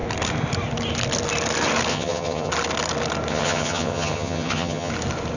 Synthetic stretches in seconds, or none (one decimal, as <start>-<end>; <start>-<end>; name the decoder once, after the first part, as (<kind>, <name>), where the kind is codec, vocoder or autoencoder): 1.9-2.5 (vocoder, HiFi-GAN); 3.3-4.9

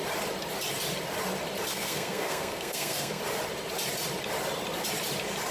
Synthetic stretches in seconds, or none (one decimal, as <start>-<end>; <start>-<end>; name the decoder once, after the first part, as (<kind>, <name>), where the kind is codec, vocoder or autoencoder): 1.7-3.2 (codec, SNAC)

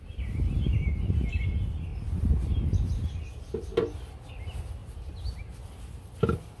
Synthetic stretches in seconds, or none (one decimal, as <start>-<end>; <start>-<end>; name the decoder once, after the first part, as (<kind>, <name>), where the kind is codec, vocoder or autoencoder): 1.9-3.2 (vocoder, BigVGAN v2)